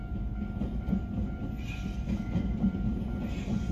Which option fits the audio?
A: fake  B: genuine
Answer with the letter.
B